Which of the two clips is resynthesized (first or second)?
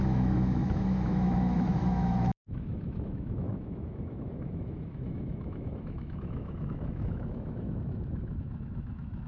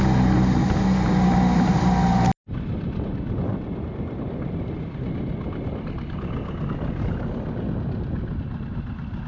first